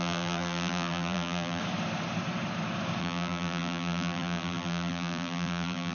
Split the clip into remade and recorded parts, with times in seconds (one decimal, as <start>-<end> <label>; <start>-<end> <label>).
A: 0.0-1.6 remade; 1.6-3.0 recorded; 3.0-5.9 remade